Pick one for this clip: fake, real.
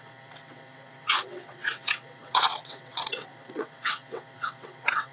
fake